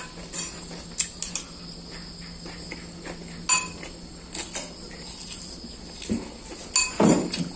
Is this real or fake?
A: real